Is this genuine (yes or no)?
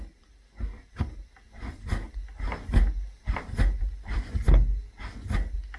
yes